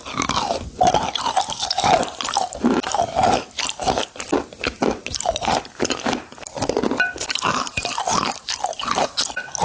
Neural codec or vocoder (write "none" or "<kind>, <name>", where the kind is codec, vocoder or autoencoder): none